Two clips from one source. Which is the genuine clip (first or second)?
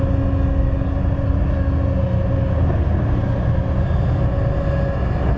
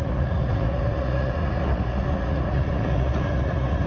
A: first